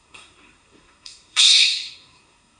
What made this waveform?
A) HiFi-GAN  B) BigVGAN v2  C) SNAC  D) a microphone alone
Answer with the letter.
C